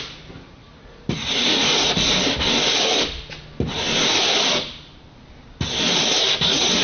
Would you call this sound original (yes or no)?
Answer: yes